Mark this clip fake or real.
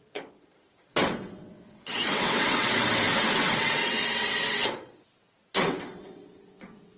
fake